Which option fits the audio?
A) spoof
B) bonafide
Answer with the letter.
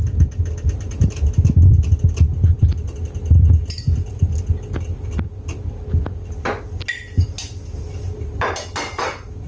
B